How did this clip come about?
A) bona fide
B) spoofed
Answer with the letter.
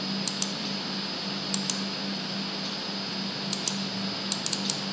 A